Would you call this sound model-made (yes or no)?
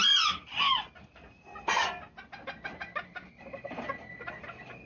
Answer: no